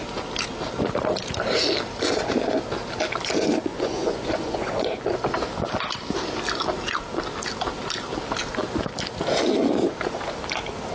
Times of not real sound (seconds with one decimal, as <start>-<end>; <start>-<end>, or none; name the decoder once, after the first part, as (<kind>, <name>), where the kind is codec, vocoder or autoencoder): 3.7-5.0 (vocoder, Vocos)